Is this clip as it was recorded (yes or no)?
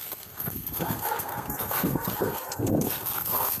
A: no